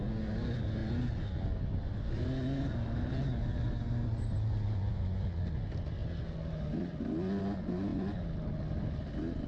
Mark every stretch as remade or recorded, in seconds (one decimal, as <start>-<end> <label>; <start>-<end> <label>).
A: 0.0-9.5 recorded